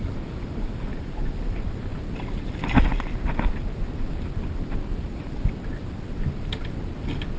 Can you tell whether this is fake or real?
real